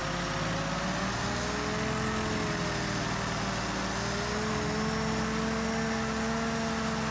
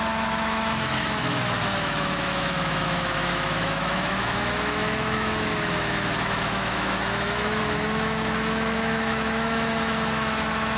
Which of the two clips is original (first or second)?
first